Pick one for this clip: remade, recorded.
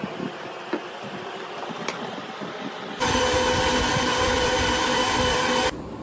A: remade